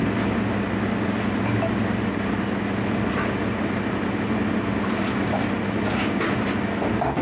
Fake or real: real